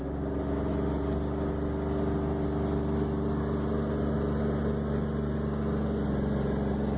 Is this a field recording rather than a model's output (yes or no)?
yes